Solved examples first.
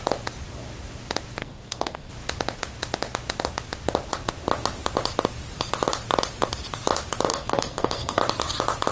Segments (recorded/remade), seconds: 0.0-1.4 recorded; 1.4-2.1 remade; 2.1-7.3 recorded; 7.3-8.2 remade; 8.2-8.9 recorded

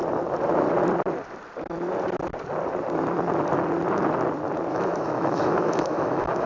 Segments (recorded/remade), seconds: 0.0-4.7 recorded; 4.7-6.5 remade